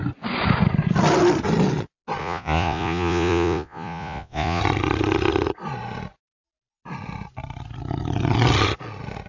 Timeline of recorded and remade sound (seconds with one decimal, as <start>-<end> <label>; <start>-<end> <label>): 0.0-2.2 recorded; 2.2-4.6 remade; 4.6-9.3 recorded